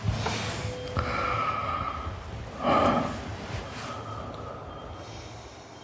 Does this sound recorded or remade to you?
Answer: recorded